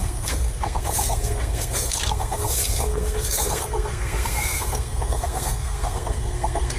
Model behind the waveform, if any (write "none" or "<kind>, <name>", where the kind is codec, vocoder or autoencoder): codec, SNAC